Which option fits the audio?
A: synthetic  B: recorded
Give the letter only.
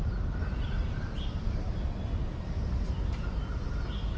B